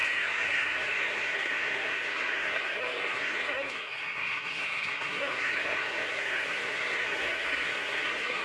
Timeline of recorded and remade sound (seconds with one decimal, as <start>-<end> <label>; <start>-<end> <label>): 0.0-8.4 remade